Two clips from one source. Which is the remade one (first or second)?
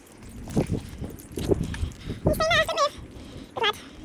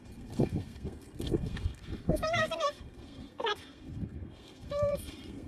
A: second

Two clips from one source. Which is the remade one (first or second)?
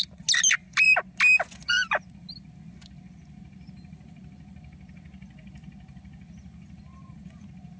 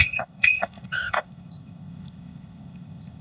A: second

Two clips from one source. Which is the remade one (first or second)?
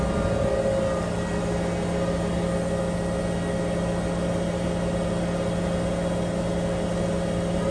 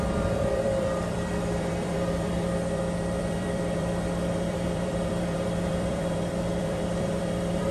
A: second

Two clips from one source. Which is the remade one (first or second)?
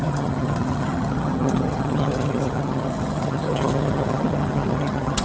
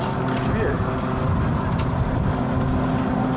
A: first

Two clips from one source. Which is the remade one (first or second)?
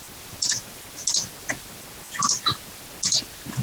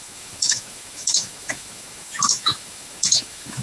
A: second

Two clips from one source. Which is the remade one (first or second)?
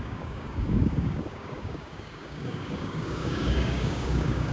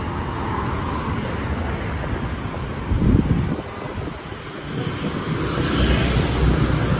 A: first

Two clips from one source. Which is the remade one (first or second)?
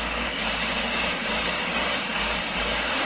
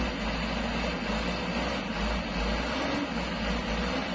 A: first